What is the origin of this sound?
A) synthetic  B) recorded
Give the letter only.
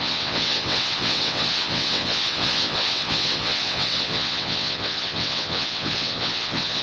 A